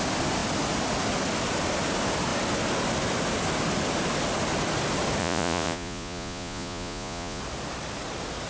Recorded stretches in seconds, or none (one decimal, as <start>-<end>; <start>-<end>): 0.0-5.2; 7.4-8.5